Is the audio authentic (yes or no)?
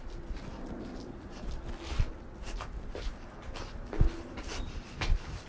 no